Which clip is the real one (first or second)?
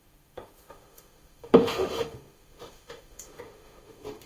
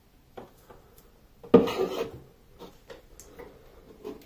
second